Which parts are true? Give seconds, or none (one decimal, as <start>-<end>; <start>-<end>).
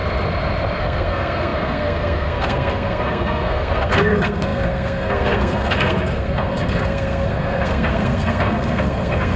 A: 0.0-0.8